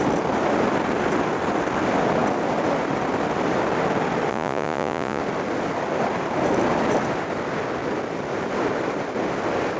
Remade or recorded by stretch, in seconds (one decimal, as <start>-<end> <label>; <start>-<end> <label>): 0.0-4.3 recorded; 4.3-5.2 remade; 5.2-9.8 recorded